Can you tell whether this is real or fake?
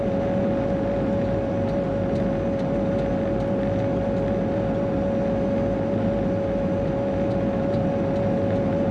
real